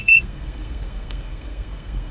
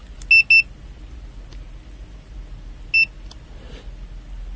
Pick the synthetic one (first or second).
first